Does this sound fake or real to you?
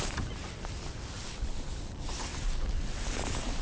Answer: real